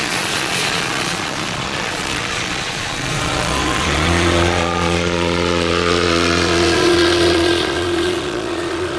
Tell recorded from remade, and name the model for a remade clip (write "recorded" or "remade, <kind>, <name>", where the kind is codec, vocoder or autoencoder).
remade, vocoder, Vocos